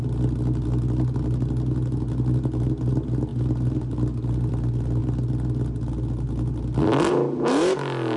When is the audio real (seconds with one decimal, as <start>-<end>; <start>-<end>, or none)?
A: 0.0-8.2